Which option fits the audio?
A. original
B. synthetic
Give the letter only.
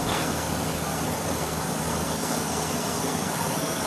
B